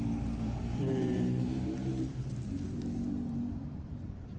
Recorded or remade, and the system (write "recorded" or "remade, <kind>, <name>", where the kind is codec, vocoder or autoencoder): remade, vocoder, BigVGAN v2